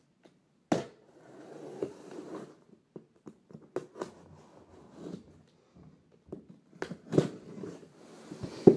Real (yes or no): yes